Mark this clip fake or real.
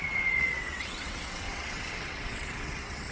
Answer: fake